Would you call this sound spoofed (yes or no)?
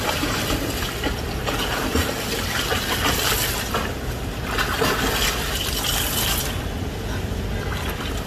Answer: no